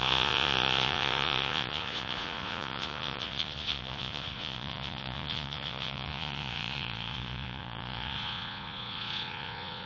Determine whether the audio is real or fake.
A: fake